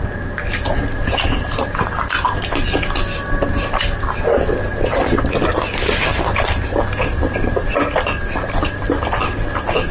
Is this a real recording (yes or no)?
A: yes